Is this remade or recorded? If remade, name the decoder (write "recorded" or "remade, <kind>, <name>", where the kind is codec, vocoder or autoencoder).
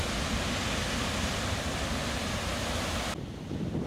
recorded